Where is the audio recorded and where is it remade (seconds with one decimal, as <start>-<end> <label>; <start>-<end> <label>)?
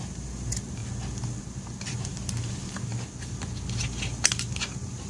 0.0-0.8 remade; 0.8-1.4 recorded; 1.4-2.9 remade; 2.9-3.8 recorded; 3.8-5.1 remade